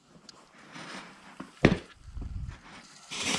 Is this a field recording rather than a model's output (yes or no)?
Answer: no